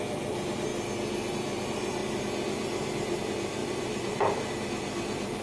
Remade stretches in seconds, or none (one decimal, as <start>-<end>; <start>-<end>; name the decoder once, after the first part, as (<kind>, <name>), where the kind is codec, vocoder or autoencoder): 0.0-0.7 (vocoder, BigVGAN v2); 1.3-2.0; 3.2-5.4

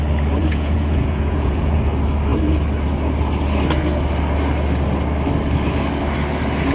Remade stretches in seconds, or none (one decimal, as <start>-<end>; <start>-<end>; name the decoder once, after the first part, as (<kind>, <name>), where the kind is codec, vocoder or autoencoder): 0.4-1.8 (vocoder, Vocos)

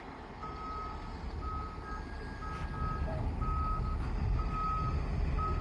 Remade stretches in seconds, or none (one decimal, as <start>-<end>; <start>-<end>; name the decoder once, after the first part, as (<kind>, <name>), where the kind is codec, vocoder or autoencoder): none

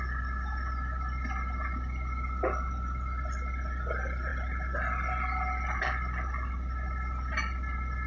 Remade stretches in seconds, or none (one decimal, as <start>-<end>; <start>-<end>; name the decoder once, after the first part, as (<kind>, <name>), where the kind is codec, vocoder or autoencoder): none

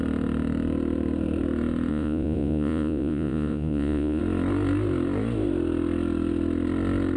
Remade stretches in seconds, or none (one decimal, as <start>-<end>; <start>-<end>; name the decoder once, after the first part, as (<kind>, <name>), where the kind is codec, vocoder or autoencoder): 1.9-4.2 (vocoder, Vocos)